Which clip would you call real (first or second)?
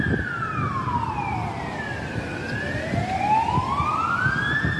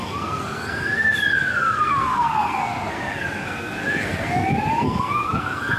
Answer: first